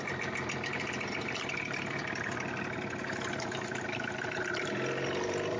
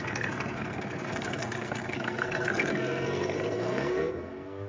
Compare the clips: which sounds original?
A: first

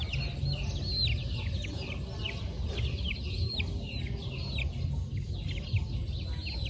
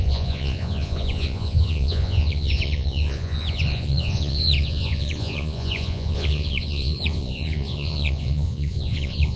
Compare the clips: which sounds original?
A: first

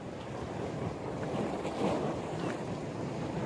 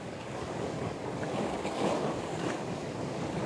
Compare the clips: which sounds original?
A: first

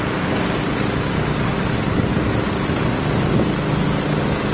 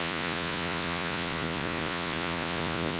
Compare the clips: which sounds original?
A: first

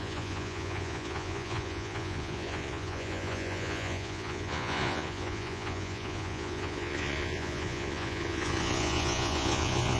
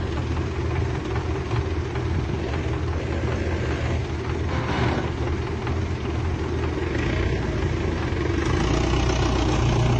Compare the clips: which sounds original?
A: second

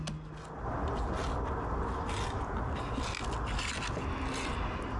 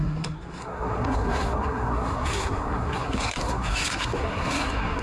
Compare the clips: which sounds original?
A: first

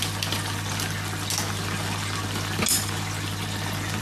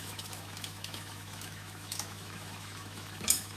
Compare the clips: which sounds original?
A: first